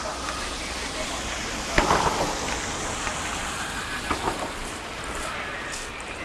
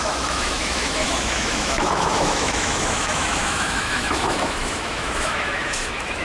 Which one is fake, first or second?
second